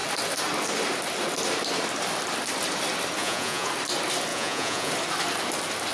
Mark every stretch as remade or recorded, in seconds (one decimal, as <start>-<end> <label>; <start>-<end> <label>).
0.0-3.2 recorded; 3.2-3.7 remade; 3.7-4.3 recorded; 4.3-4.9 remade; 4.9-5.9 recorded